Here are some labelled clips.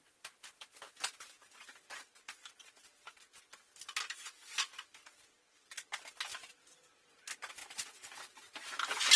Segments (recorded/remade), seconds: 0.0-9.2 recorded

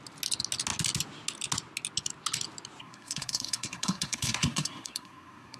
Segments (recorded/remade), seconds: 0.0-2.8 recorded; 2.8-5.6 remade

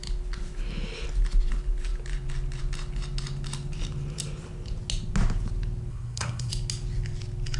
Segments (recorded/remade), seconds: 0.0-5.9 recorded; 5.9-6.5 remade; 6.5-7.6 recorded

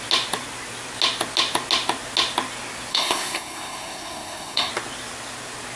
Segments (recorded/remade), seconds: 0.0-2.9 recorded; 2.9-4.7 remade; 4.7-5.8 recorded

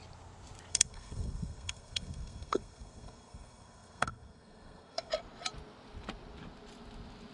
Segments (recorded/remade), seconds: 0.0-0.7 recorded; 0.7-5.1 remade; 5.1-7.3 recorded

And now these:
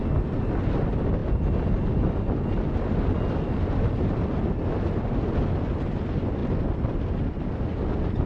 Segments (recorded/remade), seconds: 0.0-8.3 recorded

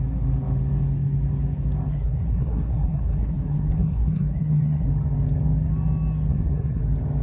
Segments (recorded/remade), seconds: 0.0-1.9 recorded; 1.9-4.9 remade; 4.9-6.3 recorded; 6.3-6.8 remade; 6.8-7.2 recorded

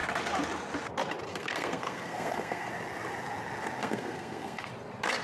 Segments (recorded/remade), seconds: 0.0-1.3 recorded; 1.3-2.7 remade; 2.7-3.8 recorded; 3.8-4.7 remade; 4.7-5.2 recorded